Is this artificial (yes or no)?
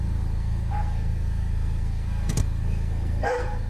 yes